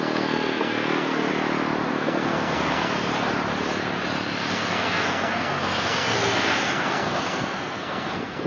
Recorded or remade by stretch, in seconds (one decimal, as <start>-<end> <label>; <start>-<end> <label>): 0.0-1.3 remade; 1.3-1.9 recorded; 1.9-3.1 remade; 3.1-4.4 recorded; 4.4-8.5 remade